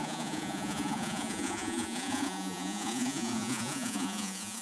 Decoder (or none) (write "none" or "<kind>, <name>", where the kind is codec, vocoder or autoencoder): vocoder, Vocos